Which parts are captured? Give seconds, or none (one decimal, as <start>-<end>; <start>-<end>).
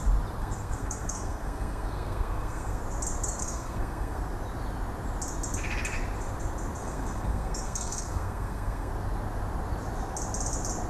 0.0-0.4; 2.8-3.4; 4.2-6.8; 8.9-10.9